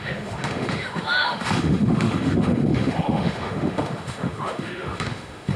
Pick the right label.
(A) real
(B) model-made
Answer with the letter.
B